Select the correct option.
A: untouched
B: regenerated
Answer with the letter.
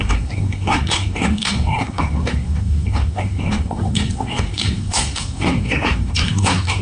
B